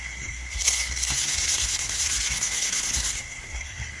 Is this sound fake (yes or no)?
yes